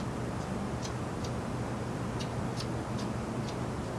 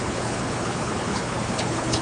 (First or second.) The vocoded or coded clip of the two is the second